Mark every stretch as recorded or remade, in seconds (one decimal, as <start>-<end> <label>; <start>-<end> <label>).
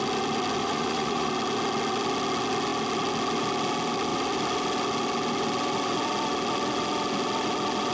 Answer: 0.0-0.6 recorded; 0.6-1.3 remade; 1.3-7.9 recorded